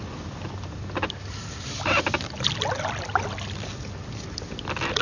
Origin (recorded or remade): recorded